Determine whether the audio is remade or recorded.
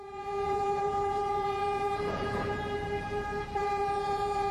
remade